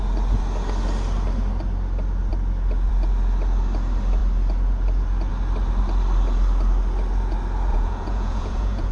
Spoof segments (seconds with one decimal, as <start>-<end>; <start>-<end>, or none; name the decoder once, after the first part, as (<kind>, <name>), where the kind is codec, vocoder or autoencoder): 7.7-8.9 (vocoder, Vocos)

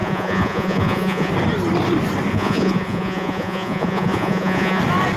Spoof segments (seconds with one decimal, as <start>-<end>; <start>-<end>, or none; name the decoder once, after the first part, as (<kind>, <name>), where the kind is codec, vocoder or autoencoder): 0.0-1.3 (vocoder, Vocos); 2.3-4.8

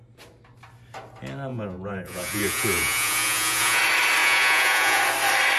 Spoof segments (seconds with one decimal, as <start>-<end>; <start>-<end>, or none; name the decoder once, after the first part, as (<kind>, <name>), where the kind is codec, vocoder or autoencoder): 1.5-3.8 (vocoder, Vocos); 4.2-5.0

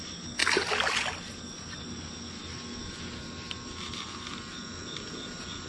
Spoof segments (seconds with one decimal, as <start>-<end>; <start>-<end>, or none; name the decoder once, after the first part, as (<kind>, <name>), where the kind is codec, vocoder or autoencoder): none